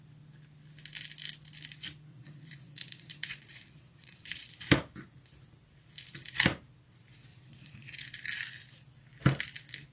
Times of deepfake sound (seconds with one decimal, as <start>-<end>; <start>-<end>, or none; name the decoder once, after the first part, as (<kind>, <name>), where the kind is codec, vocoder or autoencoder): 2.1-4.5 (vocoder, Vocos); 7.3-8.0

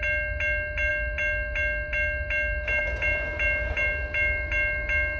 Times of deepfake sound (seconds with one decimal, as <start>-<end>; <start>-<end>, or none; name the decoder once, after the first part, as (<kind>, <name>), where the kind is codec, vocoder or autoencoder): none